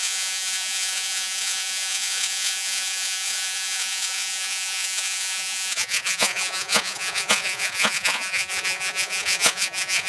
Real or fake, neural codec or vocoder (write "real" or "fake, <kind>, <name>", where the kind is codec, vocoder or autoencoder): fake, vocoder, Vocos